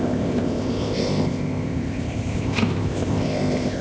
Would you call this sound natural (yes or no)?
no